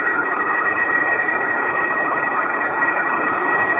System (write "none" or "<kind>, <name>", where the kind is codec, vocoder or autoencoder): codec, HILCodec